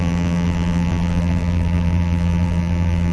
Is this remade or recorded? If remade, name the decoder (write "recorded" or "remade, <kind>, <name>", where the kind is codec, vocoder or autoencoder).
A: remade, vocoder, BigVGAN v2